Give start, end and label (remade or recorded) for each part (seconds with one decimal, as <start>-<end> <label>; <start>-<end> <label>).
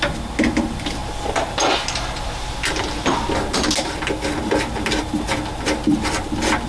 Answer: 0.0-6.7 recorded